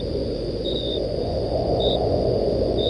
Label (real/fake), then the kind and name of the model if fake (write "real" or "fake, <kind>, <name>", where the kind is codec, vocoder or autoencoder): fake, vocoder, Vocos